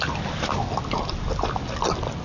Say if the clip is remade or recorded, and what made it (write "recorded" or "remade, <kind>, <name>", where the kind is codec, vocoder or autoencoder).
recorded